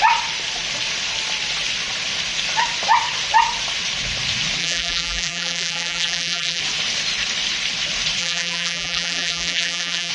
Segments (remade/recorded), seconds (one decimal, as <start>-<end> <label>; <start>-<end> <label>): 0.0-4.6 recorded; 4.6-6.6 remade; 6.6-8.2 recorded; 8.2-10.1 remade